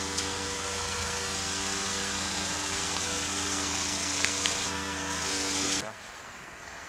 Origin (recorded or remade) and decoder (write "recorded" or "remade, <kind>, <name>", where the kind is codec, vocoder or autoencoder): remade, codec, SNAC